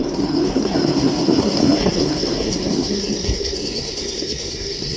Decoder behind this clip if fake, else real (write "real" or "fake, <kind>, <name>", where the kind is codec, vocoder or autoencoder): fake, codec, SNAC